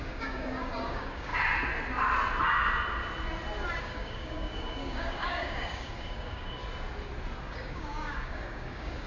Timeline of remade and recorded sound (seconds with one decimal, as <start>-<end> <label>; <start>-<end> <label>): 0.0-1.3 remade; 1.3-3.8 recorded; 3.8-6.6 remade; 6.6-7.4 recorded; 7.4-9.1 remade

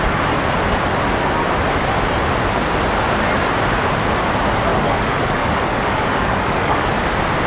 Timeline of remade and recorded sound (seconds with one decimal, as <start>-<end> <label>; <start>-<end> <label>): 0.0-4.7 recorded; 4.7-6.9 remade; 6.9-7.5 recorded